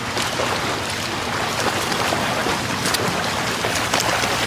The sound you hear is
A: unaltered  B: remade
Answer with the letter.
A